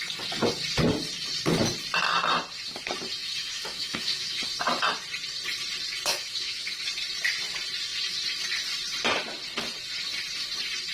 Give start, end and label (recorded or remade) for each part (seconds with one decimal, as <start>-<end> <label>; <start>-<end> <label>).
0.0-3.2 recorded; 3.2-4.4 remade; 4.4-6.1 recorded; 6.1-6.8 remade; 6.8-10.9 recorded